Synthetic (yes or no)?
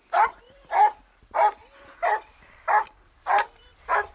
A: yes